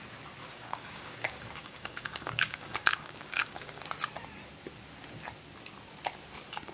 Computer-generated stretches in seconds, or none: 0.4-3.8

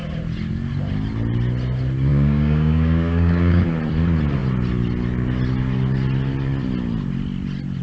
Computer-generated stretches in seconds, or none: 2.1-3.6

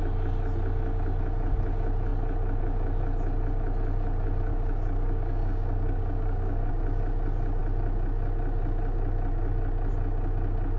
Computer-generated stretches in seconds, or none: 4.5-6.7

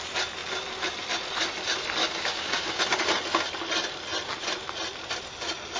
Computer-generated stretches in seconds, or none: 2.0-2.8

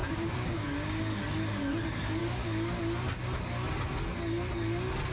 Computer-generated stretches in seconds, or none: 0.0-1.0; 2.2-2.8

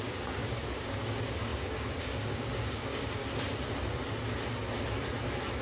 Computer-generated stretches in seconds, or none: 0.0-3.2

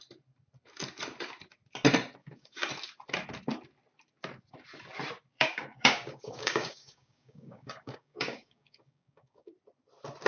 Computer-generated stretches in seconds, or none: 2.2-2.7; 5.3-9.5